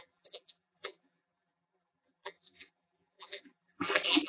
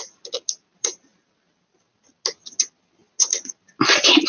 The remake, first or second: first